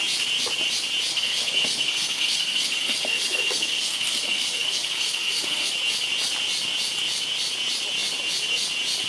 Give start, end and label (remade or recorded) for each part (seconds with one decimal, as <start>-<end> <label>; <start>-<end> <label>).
0.0-1.1 recorded; 1.1-5.7 remade; 5.7-9.1 recorded